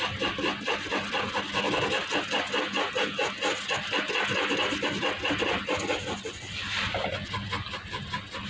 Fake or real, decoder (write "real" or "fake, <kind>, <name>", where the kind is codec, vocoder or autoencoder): real